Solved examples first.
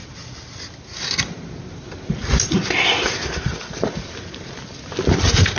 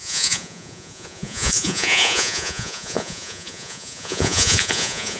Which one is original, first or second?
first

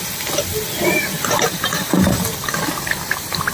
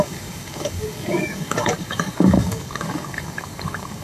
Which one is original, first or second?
first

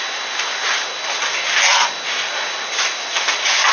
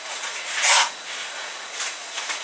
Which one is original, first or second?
first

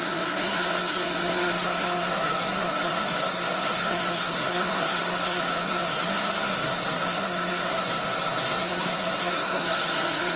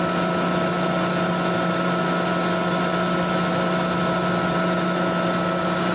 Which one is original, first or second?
second